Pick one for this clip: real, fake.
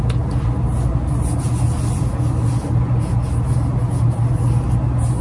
real